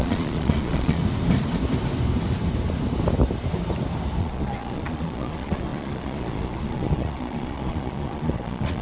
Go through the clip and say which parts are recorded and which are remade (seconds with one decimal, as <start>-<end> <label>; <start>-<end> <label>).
0.0-1.0 remade; 1.0-4.2 recorded; 4.2-8.8 remade